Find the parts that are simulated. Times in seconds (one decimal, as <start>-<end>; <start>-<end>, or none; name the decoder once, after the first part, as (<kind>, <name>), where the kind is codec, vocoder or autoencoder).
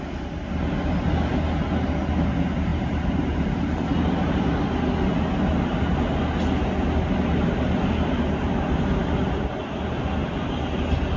2.7-4.5 (vocoder, BigVGAN v2)